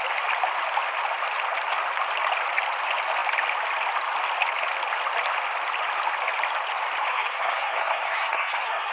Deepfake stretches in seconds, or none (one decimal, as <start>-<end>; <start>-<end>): 7.1-8.9